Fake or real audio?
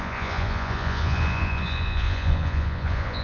fake